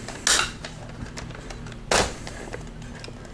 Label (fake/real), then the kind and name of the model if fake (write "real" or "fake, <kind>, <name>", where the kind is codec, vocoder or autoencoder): real